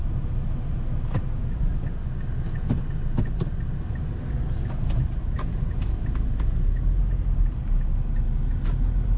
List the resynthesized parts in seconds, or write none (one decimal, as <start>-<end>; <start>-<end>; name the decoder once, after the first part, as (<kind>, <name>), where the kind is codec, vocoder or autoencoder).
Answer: none